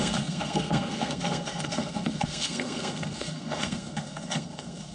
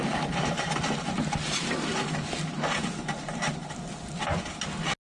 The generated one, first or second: first